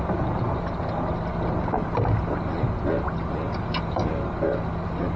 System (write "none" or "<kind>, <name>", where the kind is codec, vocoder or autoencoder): none